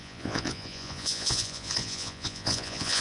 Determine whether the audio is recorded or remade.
remade